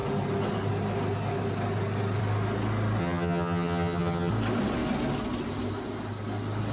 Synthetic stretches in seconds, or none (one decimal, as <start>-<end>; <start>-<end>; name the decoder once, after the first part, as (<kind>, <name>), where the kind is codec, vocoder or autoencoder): 3.0-4.3 (vocoder, HiFi-GAN)